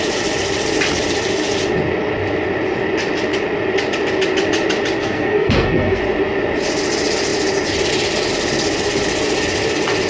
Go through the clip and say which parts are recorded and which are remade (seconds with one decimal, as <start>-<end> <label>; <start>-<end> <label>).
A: 0.0-5.0 recorded; 5.0-6.0 remade; 6.0-10.1 recorded